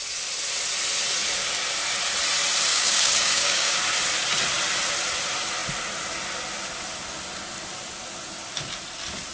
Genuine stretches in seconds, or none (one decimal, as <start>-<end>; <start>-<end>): 0.0-2.7; 3.8-9.3